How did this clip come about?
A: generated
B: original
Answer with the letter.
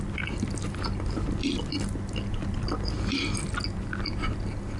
B